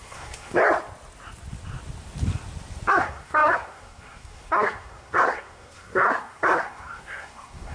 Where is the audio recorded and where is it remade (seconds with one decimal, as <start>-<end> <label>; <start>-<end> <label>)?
0.0-0.6 remade; 0.6-2.9 recorded; 2.9-7.7 remade